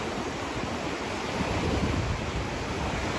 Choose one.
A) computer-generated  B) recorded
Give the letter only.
B